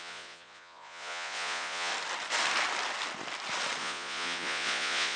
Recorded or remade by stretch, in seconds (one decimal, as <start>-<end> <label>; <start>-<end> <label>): 0.0-1.9 remade; 1.9-3.8 recorded; 3.8-5.2 remade